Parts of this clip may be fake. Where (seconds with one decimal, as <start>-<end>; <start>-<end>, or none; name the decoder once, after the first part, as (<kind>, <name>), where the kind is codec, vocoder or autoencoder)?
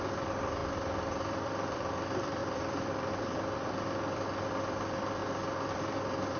0.0-0.6 (vocoder, BigVGAN v2); 1.2-5.2; 5.7-6.4